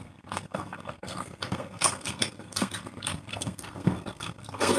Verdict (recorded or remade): remade